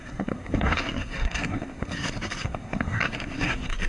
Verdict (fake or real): fake